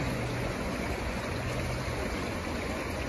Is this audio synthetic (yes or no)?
yes